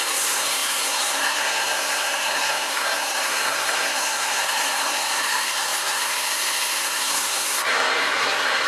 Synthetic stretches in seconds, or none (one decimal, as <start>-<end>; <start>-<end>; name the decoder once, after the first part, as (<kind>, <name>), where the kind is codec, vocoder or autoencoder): 0.0-8.7 (codec, SNAC)